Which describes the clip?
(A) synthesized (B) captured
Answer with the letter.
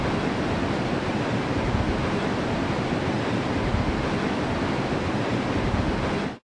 B